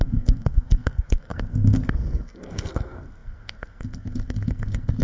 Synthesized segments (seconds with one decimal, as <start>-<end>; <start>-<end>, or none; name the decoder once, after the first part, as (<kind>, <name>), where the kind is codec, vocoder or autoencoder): 0.0-5.0 (codec, SNAC)